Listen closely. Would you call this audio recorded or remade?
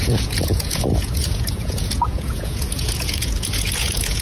remade